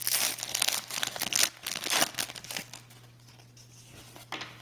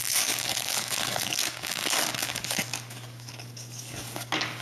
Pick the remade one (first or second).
second